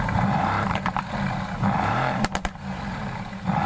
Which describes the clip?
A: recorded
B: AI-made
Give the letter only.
B